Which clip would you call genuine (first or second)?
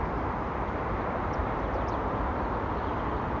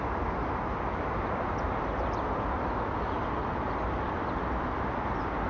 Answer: second